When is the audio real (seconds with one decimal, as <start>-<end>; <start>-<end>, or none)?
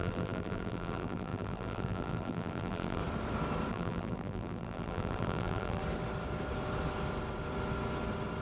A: 3.0-3.7; 5.8-8.4